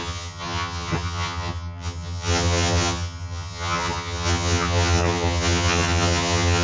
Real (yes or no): no